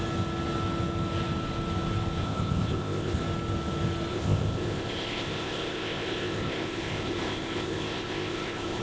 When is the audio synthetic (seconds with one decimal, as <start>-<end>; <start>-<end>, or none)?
2.2-3.2; 4.1-8.8